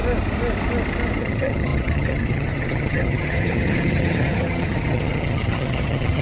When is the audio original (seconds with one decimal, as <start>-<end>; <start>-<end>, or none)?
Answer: 0.0-1.2